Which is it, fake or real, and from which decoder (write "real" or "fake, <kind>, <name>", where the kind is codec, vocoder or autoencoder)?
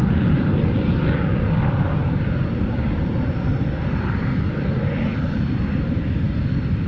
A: real